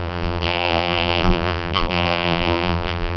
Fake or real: fake